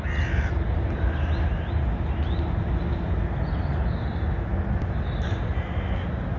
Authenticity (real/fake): real